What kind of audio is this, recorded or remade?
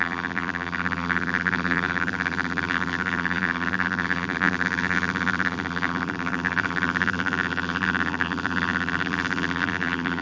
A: remade